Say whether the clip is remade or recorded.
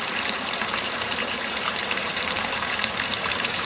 remade